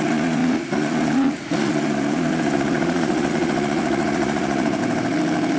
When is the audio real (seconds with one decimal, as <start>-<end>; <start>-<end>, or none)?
4.8-5.6